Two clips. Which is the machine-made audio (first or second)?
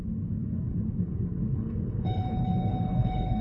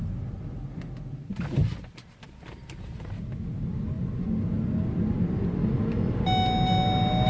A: first